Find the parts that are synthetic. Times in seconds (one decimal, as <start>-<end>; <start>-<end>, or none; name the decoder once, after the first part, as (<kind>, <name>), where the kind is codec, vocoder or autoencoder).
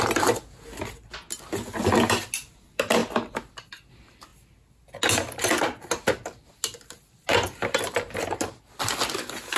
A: none